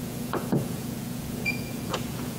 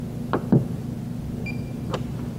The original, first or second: second